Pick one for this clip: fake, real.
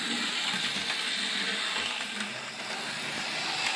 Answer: fake